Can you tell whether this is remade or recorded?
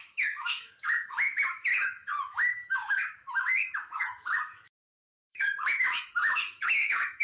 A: remade